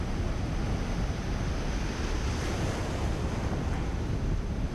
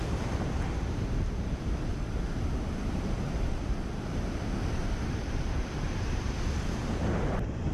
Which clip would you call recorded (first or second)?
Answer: first